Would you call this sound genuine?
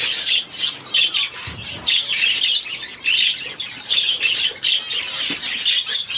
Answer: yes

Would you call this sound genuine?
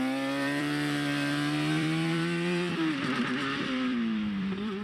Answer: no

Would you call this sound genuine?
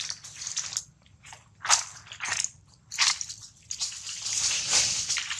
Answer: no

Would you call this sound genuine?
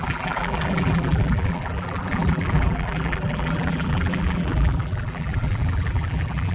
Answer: no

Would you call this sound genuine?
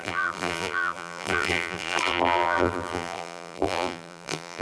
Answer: no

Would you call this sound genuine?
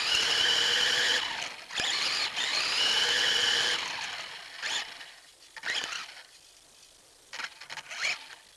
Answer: yes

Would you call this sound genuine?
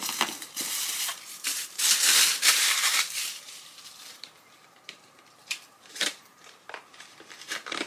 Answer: no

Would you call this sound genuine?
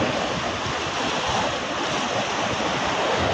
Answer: yes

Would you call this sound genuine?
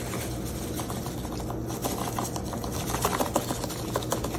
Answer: yes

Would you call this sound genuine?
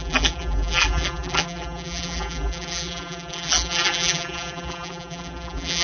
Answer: no